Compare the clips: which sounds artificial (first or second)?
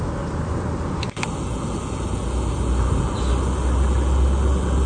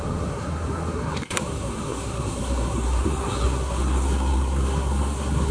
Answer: second